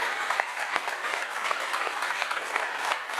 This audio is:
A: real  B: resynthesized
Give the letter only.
B